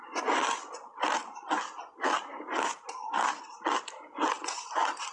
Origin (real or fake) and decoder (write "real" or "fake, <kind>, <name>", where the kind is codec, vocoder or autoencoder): real